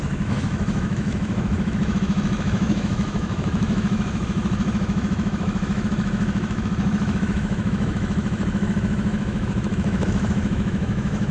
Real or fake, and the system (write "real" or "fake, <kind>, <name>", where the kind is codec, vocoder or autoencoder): fake, autoencoder, DAC-VAE